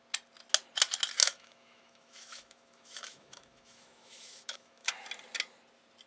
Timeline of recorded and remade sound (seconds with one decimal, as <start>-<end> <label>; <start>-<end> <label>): 0.0-1.2 recorded; 1.2-4.9 remade; 4.9-6.1 recorded